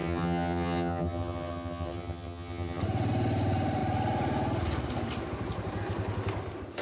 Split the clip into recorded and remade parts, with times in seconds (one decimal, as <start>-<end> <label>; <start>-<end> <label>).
0.0-2.8 remade; 2.8-6.8 recorded